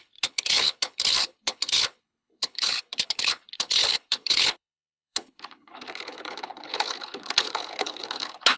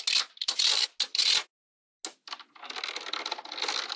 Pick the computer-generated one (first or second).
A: first